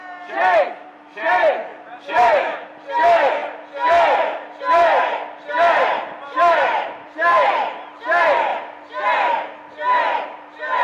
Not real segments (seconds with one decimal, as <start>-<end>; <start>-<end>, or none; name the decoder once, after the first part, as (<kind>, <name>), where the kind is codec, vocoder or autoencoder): 0.0-3.4 (vocoder, BigVGAN v2); 5.7-8.5; 10.2-10.8